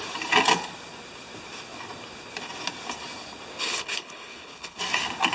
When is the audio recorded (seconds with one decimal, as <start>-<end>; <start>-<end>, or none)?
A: 0.0-3.6; 4.8-5.3